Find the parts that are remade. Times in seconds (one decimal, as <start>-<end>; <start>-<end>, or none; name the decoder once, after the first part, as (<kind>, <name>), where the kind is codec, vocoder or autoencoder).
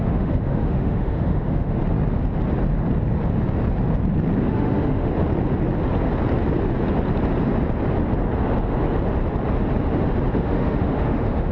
0.0-1.8 (autoencoder, DAC-VAE); 4.4-5.1; 10.3-11.5